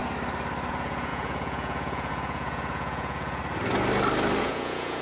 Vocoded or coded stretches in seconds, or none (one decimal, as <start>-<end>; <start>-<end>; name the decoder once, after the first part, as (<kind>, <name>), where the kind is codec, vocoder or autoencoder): 0.7-3.4 (vocoder, Vocos); 4.4-5.0

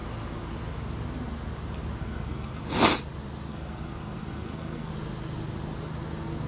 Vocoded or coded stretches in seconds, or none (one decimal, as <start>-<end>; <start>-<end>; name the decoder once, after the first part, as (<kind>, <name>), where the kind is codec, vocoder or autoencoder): 2.0-2.6 (codec, SNAC); 3.5-4.9

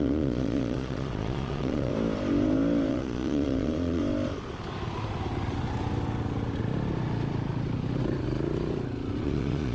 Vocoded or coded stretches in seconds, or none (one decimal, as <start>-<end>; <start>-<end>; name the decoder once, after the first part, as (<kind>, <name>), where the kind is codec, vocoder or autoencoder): 0.0-1.9 (vocoder, Vocos); 2.9-4.0; 9.2-9.7

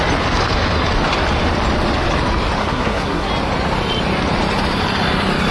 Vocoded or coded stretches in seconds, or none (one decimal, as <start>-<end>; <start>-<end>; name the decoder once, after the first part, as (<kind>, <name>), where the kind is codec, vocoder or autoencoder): 2.6-3.3 (codec, SNAC)

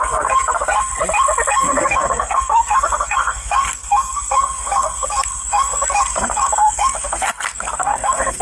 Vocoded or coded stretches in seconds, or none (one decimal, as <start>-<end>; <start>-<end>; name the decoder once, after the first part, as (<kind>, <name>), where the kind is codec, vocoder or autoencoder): 0.0-0.9 (codec, SNAC); 1.5-8.4

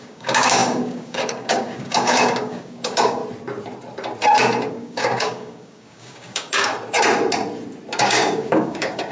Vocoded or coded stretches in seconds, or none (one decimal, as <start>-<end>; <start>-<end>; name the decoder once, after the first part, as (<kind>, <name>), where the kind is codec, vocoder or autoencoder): 0.0-3.2 (codec, DAC); 4.7-6.7; 8.0-9.1

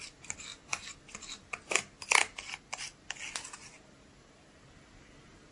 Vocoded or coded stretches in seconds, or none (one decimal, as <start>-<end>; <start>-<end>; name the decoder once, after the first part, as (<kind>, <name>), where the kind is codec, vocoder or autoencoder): none